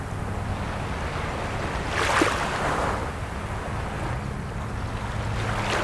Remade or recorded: recorded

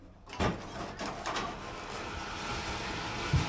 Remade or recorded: recorded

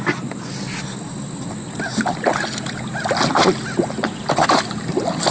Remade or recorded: recorded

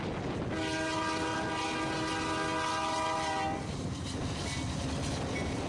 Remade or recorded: recorded